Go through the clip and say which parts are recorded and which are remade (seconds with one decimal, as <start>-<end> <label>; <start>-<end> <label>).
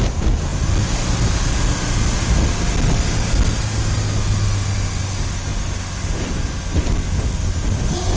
0.0-8.2 recorded